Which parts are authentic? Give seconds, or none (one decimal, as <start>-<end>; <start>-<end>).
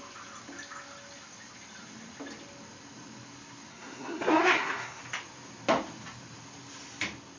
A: 0.0-3.7; 5.0-7.4